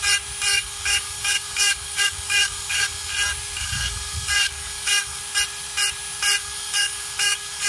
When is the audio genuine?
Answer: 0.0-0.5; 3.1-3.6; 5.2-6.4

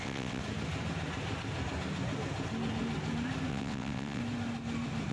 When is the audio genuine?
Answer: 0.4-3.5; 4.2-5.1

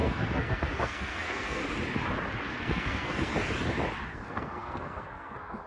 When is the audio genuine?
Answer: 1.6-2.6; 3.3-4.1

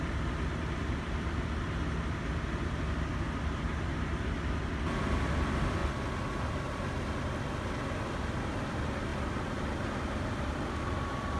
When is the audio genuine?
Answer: 5.8-8.4